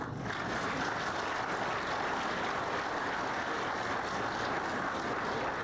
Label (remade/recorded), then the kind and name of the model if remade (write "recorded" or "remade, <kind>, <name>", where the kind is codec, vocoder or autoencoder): recorded